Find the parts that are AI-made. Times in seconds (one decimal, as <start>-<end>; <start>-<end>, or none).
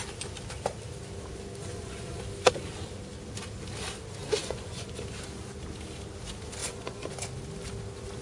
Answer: 1.6-2.2; 4.4-5.0; 6.6-7.1